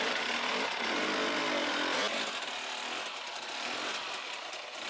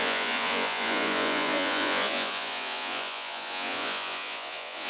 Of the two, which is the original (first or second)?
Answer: first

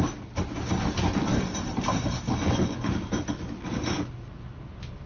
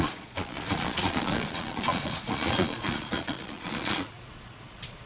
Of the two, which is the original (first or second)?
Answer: first